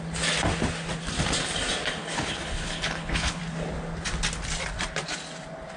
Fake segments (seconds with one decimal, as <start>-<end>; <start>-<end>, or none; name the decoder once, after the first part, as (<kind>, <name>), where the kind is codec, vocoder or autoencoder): 2.0-3.4 (codec, HILCodec)